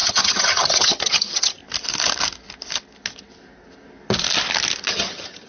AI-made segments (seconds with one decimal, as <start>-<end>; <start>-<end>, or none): 0.0-1.6; 4.9-5.5